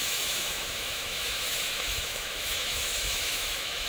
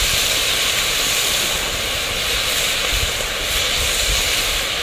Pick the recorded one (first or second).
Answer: second